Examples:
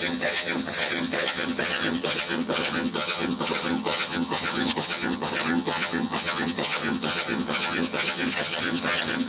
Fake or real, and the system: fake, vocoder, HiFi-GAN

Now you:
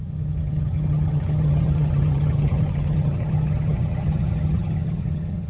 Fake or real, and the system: fake, vocoder, HiFi-GAN